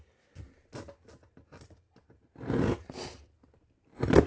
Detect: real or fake real